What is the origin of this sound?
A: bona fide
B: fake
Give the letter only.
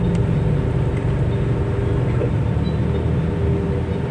A